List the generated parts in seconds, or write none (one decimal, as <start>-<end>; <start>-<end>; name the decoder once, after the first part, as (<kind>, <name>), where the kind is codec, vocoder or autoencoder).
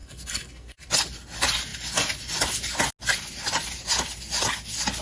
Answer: 0.0-0.9 (codec, SNAC)